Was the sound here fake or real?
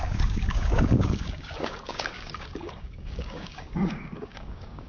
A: fake